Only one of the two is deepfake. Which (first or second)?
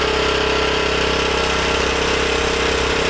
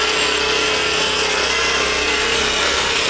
second